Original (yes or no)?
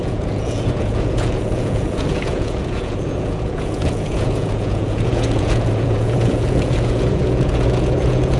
no